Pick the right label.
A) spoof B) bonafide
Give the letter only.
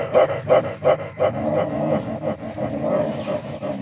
B